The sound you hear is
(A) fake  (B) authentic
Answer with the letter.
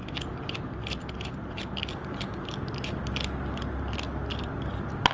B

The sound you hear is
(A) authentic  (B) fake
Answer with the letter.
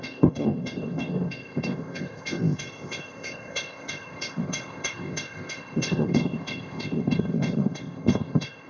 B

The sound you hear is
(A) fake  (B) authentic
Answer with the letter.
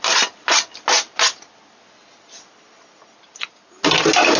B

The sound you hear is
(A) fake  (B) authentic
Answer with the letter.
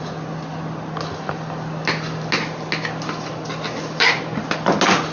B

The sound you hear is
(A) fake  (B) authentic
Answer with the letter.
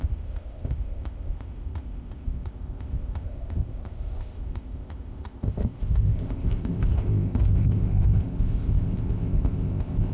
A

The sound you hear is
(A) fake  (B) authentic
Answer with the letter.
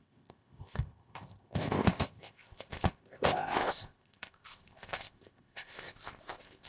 A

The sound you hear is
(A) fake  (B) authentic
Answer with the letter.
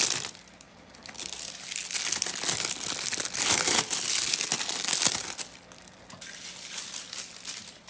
B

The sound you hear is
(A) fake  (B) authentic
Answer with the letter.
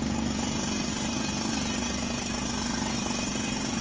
B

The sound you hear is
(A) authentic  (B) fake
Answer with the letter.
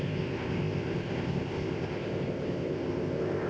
B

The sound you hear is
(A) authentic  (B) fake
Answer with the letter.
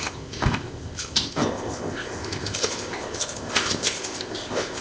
B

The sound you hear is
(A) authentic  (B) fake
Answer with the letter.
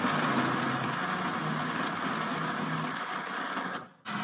A